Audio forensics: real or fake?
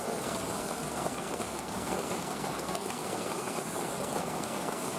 fake